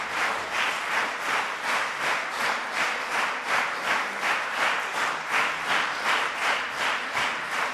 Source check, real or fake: real